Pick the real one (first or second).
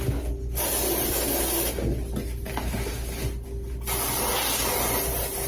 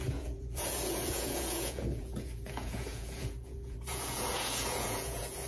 first